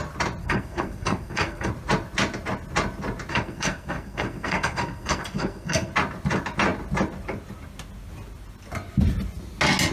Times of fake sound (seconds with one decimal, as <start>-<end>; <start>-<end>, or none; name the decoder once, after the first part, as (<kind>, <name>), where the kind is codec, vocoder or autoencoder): 0.4-1.7 (codec, SNAC); 3.3-5.9